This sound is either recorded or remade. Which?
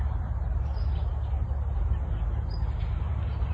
recorded